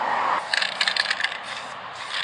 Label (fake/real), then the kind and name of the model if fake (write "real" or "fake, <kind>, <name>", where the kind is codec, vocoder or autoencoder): real